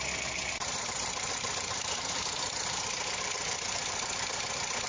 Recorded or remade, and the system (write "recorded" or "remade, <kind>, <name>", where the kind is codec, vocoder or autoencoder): recorded